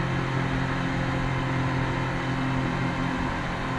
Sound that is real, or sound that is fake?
real